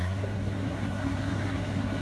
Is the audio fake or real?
fake